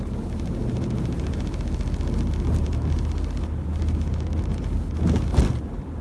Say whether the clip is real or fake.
real